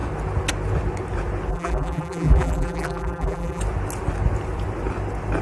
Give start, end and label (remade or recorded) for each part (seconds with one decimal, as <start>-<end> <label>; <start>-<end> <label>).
0.0-1.5 recorded; 1.5-3.6 remade; 3.6-5.4 recorded